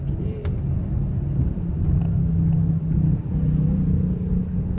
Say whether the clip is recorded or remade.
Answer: recorded